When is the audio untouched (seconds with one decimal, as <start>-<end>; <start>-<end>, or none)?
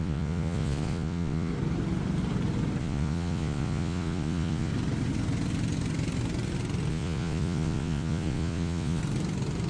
1.5-2.8; 4.7-6.9; 9.0-9.7